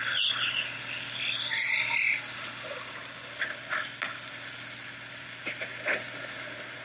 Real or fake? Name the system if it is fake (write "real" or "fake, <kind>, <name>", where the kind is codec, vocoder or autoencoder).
real